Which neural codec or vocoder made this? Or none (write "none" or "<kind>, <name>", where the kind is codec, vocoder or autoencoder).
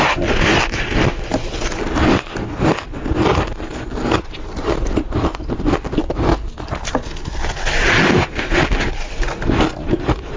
none